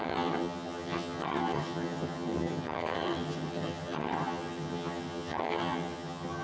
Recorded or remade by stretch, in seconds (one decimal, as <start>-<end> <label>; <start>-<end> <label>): 0.0-6.4 remade